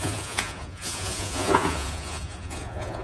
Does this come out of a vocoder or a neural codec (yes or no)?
yes